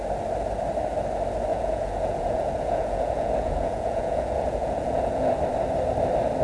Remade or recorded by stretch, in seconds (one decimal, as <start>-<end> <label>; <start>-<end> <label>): 0.0-1.5 recorded; 1.5-5.3 remade; 5.3-6.4 recorded

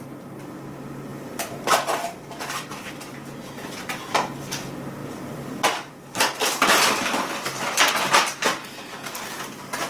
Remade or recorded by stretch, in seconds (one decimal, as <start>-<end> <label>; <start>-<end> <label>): 0.0-1.1 recorded; 1.1-2.9 remade; 2.9-5.0 recorded; 5.0-6.0 remade; 6.0-6.4 recorded; 6.4-8.2 remade; 8.2-9.9 recorded

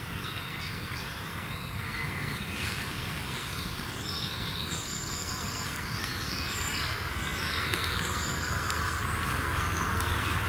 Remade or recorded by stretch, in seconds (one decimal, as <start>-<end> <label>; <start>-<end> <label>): 0.0-10.5 remade

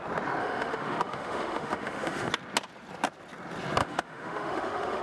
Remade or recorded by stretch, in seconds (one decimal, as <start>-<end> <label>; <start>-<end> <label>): 0.0-0.4 recorded; 0.4-2.3 remade; 2.3-3.8 recorded; 3.8-5.0 remade